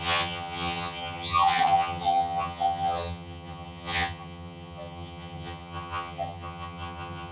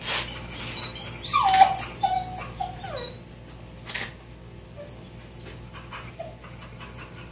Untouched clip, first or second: second